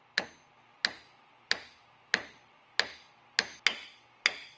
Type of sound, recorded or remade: recorded